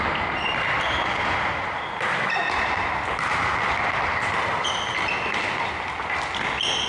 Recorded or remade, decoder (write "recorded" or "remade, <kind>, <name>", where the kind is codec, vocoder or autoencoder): recorded